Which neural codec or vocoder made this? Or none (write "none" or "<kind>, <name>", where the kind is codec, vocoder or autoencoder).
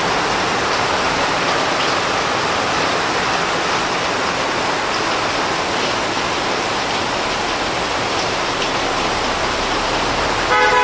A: none